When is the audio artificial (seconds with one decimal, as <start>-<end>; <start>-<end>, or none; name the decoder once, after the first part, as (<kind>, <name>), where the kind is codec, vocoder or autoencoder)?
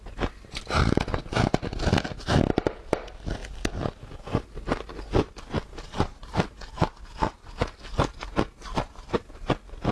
none